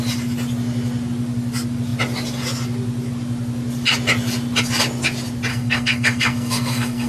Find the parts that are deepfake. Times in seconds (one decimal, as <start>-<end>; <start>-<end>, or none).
5.5-7.1